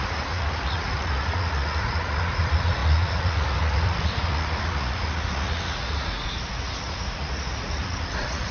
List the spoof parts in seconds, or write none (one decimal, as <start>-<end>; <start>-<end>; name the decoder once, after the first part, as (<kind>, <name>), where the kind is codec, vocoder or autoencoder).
0.0-8.5 (vocoder, Vocos)

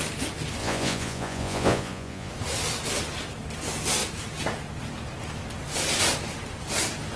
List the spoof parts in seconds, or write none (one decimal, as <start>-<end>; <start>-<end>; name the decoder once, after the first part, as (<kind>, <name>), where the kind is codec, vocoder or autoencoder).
0.6-2.3 (vocoder, Vocos)